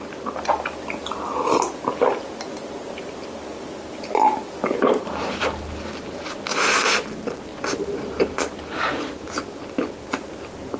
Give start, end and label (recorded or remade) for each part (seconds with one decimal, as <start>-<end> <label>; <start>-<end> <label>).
0.0-4.6 recorded; 4.6-5.9 remade; 5.9-10.8 recorded